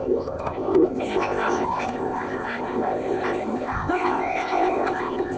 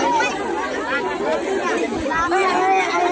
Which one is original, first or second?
second